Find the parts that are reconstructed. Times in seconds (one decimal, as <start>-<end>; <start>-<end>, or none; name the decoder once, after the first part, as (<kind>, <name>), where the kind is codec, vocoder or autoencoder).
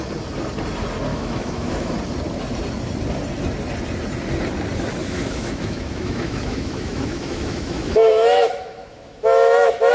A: 1.1-1.9 (autoencoder, DAC-VAE); 5.0-9.9